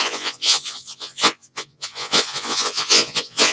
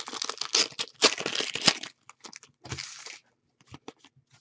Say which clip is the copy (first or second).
first